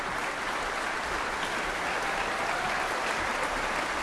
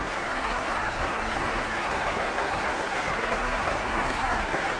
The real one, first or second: first